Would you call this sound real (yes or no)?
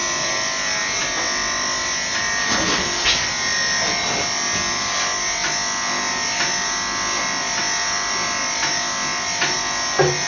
yes